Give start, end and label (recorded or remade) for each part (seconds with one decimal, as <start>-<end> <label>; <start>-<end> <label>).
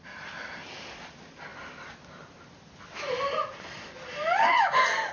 0.0-5.1 recorded